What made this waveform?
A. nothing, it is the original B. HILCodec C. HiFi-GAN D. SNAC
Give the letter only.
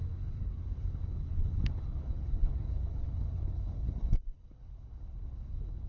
B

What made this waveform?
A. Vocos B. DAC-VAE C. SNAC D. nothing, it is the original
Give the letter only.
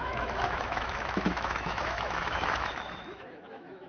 B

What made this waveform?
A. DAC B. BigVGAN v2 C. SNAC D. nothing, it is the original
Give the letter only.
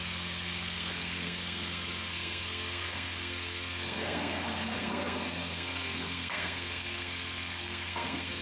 C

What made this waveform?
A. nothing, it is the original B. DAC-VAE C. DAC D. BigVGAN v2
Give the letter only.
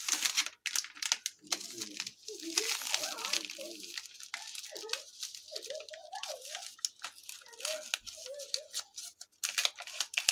A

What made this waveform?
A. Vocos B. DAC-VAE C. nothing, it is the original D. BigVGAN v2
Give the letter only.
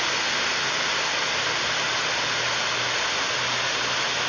C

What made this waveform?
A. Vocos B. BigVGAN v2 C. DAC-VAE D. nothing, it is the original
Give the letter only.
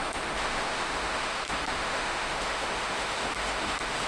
C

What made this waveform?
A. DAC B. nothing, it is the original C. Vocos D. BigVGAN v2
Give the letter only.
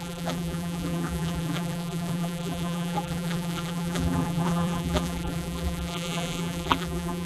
D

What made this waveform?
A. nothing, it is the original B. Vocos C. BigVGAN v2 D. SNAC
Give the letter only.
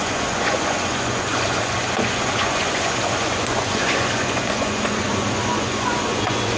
B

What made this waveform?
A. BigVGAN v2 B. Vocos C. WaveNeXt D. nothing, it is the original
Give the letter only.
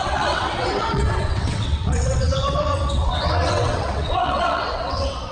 C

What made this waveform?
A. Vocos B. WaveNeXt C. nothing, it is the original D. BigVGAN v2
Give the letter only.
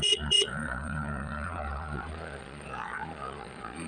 A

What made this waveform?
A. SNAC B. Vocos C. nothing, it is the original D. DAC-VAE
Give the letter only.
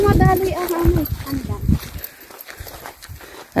C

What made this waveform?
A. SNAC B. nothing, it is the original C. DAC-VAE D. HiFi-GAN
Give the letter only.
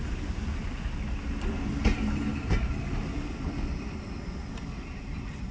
B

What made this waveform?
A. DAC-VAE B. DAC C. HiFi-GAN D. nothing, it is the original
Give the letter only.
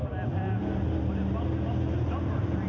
D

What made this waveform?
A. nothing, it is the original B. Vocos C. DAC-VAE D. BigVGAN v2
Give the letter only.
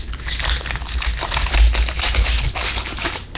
A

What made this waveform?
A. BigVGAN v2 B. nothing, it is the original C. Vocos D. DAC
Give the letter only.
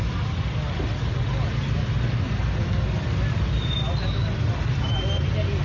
B